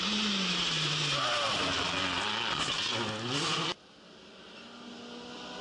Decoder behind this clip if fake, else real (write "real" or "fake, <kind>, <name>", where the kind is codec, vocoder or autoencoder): real